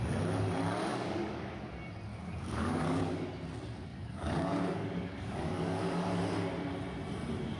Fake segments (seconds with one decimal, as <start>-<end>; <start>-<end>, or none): 0.9-1.6; 2.1-3.3; 3.9-6.2